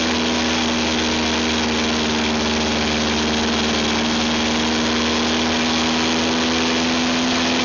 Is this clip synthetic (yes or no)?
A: no